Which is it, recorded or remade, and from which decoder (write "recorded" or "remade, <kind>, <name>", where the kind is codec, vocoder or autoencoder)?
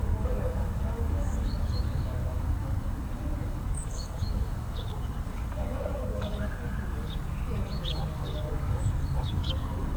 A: remade, codec, DAC